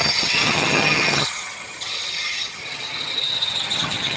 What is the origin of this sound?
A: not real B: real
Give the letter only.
A